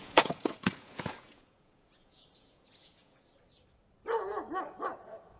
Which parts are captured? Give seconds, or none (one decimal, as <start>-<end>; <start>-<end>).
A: 3.2-5.4